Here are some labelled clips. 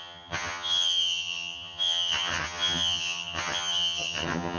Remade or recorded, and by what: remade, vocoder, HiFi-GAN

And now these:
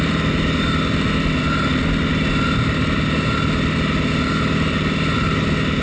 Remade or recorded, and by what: recorded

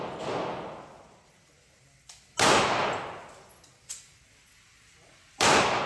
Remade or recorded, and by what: recorded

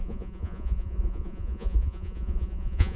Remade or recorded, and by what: remade, vocoder, Vocos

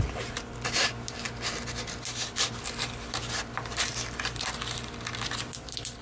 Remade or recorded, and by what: remade, vocoder, BigVGAN v2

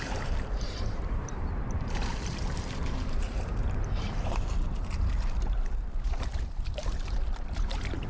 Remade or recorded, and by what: remade, vocoder, BigVGAN v2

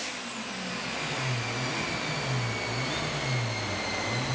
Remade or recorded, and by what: recorded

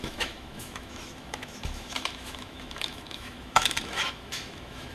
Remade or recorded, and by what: remade, autoencoder, DAC-VAE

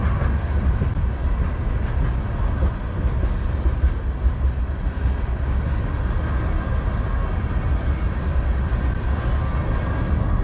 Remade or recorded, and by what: recorded